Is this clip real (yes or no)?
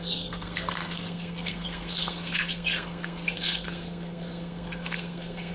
no